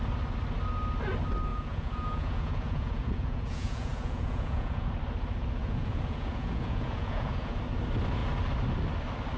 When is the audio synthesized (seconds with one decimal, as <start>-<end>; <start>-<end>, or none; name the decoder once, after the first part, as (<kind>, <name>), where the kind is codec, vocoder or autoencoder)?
1.5-4.9 (vocoder, Vocos); 5.6-7.6